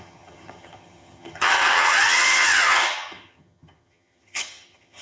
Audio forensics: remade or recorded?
remade